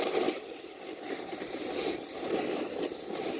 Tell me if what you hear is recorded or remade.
recorded